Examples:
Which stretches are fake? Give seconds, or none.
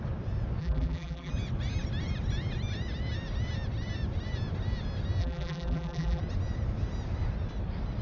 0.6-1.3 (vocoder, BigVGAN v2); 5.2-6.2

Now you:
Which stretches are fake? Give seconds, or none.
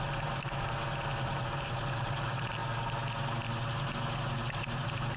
0.0-2.6 (vocoder, BigVGAN v2); 3.9-5.2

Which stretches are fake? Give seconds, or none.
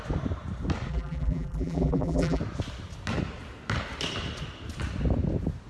0.9-2.4 (vocoder, BigVGAN v2)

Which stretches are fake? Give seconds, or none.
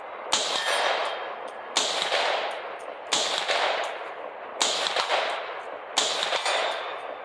none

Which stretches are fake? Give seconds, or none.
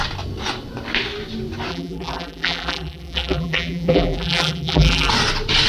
1.7-5.1 (vocoder, BigVGAN v2)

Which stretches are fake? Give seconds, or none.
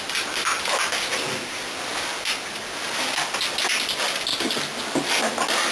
none